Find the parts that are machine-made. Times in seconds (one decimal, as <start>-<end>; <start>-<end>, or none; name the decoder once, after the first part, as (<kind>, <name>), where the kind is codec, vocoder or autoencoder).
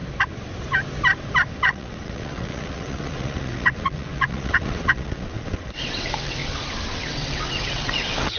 1.6-6.4 (vocoder, WaveNeXt); 6.9-8.4